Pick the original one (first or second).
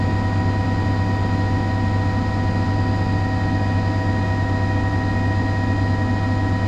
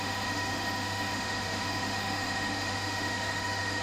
first